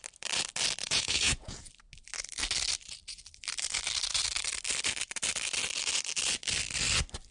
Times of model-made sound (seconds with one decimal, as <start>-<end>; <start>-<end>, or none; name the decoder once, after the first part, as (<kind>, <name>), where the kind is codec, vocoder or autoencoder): 0.8-1.7 (vocoder, Vocos)